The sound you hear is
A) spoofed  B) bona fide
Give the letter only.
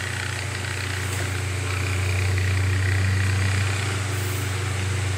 B